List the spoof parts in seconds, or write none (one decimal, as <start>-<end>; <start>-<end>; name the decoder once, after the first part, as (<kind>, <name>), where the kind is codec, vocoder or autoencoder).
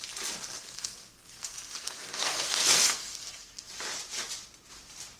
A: 0.6-3.7 (codec, SNAC)